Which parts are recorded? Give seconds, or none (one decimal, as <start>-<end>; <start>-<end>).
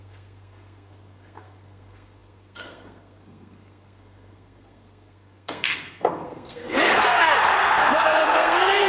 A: none